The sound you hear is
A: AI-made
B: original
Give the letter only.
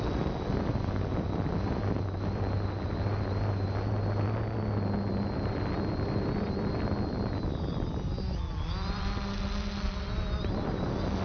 B